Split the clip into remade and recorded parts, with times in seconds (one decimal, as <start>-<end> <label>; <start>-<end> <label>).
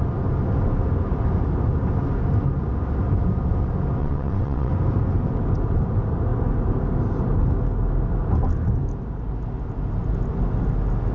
0.0-4.0 recorded; 4.0-4.7 remade; 4.7-11.1 recorded